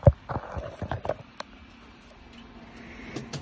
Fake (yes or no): no